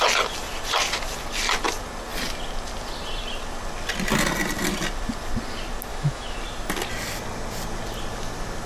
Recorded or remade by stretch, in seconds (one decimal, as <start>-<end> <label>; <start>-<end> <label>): 0.0-5.9 recorded; 5.9-6.4 remade; 6.4-8.7 recorded